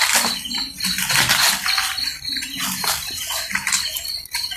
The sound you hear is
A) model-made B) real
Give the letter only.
B